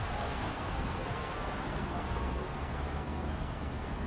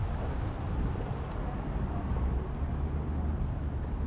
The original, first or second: second